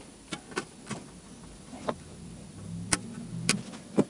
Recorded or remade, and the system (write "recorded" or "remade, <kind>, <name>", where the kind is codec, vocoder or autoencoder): recorded